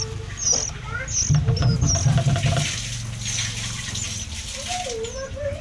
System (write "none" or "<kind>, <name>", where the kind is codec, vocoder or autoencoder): none